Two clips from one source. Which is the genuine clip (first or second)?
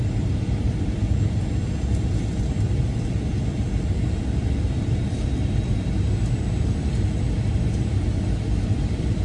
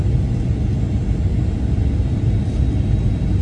second